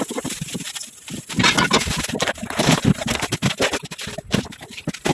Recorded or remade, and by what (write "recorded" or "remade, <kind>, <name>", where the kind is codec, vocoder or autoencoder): recorded